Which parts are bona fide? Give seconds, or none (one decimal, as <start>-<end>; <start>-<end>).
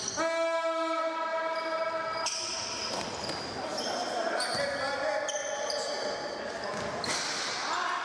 0.0-1.3; 1.8-8.0